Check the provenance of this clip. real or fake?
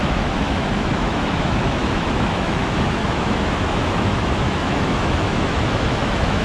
fake